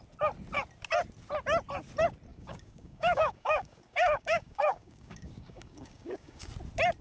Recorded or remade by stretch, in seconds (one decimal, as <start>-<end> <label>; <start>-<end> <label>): 0.0-2.3 recorded; 2.3-6.5 remade; 6.5-7.0 recorded